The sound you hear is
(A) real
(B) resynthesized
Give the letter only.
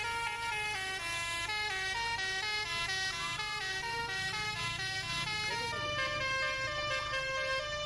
A